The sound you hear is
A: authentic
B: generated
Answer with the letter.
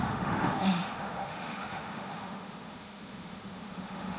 B